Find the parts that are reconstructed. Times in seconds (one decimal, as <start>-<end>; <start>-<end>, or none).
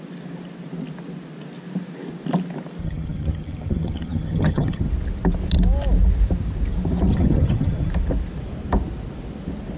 2.8-4.9; 7.1-7.9